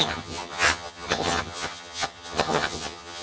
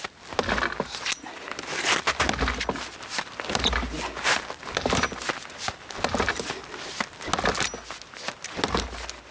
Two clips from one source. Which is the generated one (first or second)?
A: first